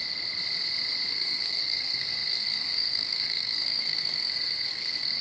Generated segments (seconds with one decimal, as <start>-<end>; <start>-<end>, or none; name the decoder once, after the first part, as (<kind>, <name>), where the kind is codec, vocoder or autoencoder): 1.1-5.2 (codec, SNAC)